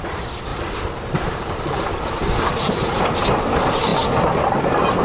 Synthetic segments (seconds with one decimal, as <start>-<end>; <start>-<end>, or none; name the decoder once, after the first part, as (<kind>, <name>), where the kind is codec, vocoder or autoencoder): 0.5-3.0 (vocoder, BigVGAN v2)